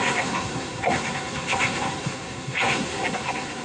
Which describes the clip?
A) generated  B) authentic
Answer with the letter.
A